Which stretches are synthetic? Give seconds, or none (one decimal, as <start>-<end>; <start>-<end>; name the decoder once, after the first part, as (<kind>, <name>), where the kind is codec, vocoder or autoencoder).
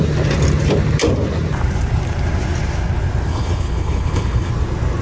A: 3.3-4.5 (codec, HILCodec)